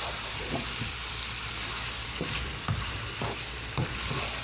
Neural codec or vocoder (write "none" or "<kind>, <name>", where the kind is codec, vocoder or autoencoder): vocoder, BigVGAN v2